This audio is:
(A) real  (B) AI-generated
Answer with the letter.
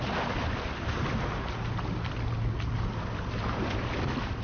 A